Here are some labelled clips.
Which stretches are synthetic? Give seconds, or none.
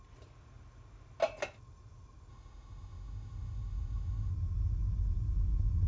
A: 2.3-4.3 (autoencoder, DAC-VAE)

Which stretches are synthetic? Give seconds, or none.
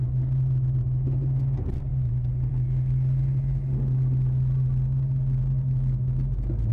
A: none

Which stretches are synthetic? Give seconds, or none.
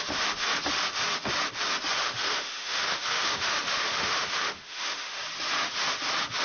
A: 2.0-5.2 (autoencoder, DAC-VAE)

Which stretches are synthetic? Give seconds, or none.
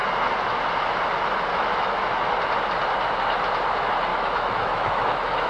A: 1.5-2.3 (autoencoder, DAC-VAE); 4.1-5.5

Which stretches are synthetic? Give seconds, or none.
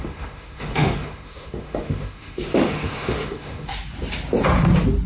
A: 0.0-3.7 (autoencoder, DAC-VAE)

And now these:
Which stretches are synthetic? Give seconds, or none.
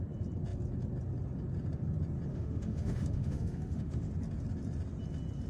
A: 2.3-4.1 (autoencoder, DAC-VAE)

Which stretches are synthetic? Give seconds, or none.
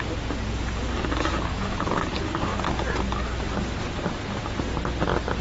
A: 1.5-2.0 (autoencoder, DAC-VAE)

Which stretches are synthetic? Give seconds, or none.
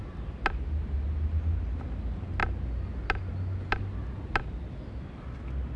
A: none